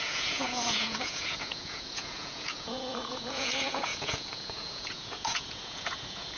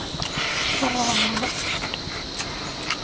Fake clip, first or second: first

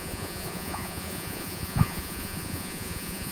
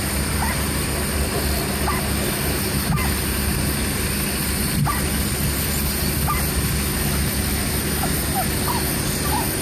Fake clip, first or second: first